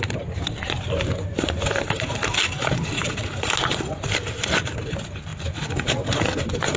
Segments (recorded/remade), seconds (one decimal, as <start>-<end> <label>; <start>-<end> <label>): 0.0-6.8 recorded